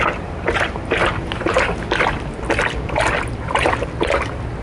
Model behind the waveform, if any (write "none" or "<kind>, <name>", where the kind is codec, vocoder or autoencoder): none